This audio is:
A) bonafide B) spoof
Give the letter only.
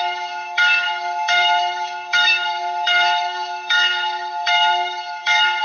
B